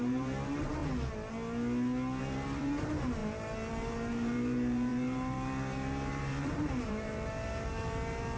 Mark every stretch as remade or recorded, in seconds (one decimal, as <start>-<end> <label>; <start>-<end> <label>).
0.0-0.8 remade; 0.8-2.2 recorded; 2.2-8.4 remade